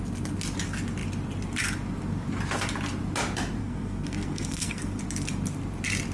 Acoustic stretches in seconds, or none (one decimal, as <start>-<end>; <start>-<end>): 0.0-3.6; 5.0-6.1